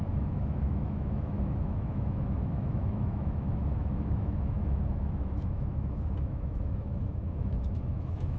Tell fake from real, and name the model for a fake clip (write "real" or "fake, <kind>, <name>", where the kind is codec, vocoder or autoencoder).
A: fake, autoencoder, DAC-VAE